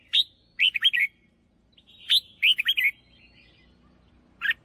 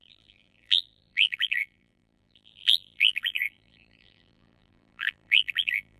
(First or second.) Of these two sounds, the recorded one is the first